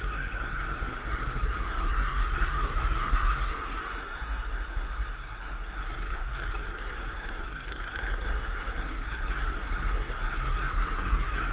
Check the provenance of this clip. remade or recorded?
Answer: remade